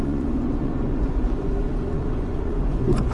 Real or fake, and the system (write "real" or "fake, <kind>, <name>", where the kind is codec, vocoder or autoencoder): fake, vocoder, Vocos